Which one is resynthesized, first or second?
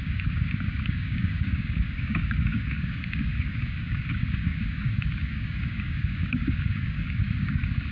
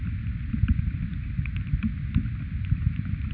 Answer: first